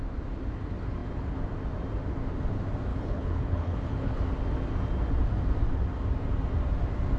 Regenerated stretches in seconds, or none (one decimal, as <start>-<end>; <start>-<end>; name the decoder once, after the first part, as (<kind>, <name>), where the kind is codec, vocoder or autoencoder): 2.9-4.2 (codec, HILCodec)